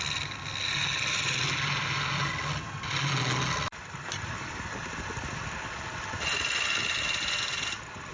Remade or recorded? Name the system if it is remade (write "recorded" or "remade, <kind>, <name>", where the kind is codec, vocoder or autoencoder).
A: recorded